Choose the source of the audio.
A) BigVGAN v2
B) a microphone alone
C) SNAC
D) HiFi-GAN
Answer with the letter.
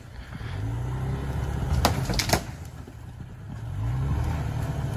B